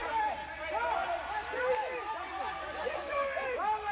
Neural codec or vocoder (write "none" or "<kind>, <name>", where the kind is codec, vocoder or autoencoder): none